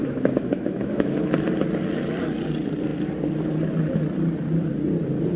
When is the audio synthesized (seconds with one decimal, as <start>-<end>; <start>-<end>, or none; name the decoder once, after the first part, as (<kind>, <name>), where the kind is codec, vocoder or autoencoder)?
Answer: 0.0-1.3 (autoencoder, DAC-VAE)